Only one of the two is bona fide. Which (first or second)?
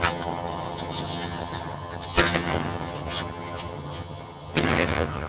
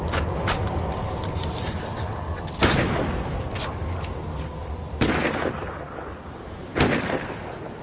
second